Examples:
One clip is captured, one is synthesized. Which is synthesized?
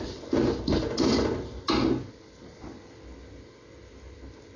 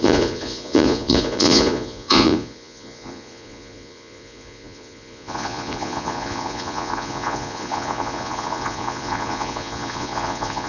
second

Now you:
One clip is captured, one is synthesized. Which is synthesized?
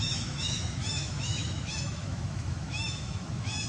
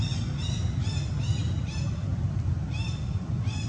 first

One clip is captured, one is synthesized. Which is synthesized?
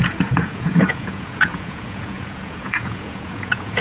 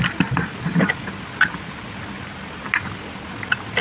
first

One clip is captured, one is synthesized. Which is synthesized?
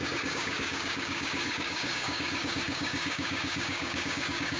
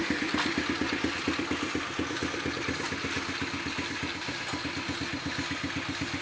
first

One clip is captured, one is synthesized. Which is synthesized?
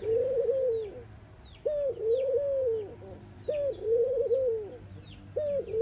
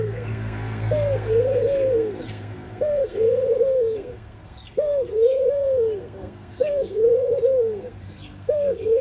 second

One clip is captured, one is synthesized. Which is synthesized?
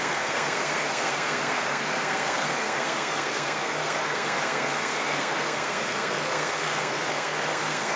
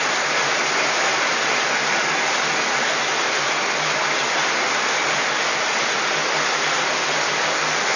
first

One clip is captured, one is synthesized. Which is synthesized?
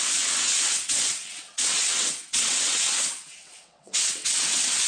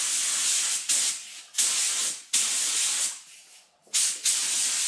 first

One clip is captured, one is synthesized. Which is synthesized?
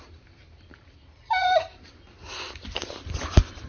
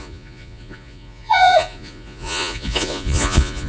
second